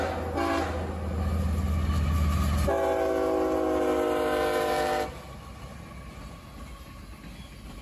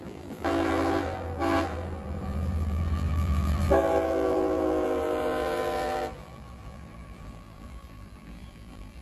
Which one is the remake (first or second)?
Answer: second